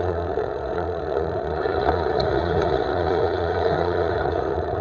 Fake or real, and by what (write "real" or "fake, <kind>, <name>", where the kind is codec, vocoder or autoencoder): fake, vocoder, Vocos